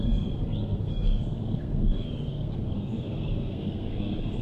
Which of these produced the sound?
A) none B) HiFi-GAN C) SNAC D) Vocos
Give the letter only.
C